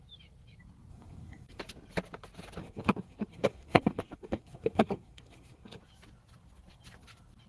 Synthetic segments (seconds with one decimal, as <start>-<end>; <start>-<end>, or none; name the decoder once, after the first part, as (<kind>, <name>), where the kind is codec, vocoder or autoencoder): 0.9-1.6 (codec, SNAC); 2.6-5.8